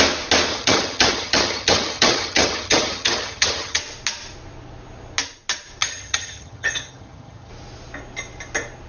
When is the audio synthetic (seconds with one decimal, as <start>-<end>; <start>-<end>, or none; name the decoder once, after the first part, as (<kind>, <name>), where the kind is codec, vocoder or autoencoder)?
0.5-3.8 (vocoder, HiFi-GAN); 5.8-7.5